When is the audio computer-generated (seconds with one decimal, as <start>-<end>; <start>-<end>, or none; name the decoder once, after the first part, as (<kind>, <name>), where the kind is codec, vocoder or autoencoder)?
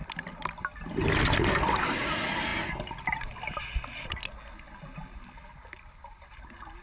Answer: none